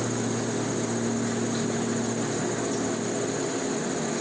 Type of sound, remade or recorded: recorded